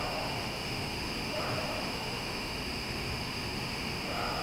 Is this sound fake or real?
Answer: fake